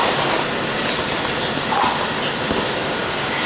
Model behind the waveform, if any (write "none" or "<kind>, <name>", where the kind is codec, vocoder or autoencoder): none